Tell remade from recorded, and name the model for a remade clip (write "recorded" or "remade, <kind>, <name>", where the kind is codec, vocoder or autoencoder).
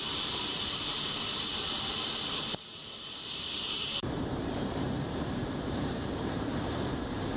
remade, vocoder, BigVGAN v2